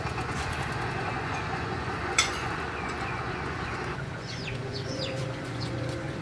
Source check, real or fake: fake